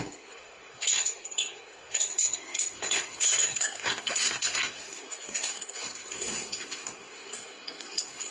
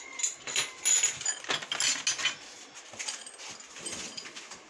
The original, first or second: second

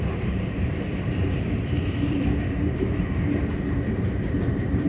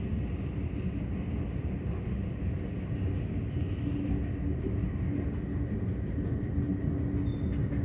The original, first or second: second